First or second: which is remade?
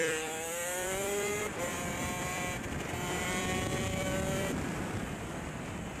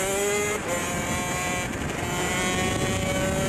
first